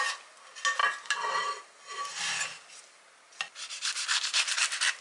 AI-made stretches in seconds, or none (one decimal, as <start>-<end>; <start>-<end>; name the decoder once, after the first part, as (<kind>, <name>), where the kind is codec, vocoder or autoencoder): none